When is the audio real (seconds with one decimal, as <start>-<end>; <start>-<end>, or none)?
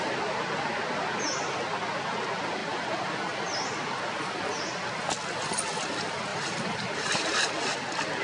0.0-2.6; 4.6-6.3; 7.5-8.2